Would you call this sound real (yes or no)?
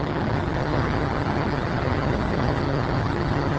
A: no